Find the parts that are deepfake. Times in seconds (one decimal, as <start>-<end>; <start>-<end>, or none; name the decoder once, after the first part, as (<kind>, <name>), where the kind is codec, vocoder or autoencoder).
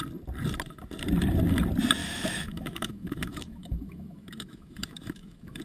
2.0-5.6 (autoencoder, DAC-VAE)